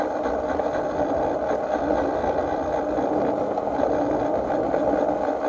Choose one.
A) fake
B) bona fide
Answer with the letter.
B